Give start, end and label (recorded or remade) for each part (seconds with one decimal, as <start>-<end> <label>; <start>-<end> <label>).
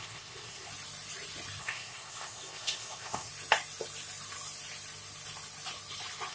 0.0-0.7 remade; 0.7-1.6 recorded; 1.6-3.3 remade; 3.3-6.3 recorded